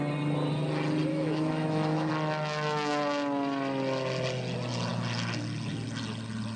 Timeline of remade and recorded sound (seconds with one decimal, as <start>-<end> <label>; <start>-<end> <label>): 0.0-1.1 recorded; 1.1-2.1 remade; 2.1-6.6 recorded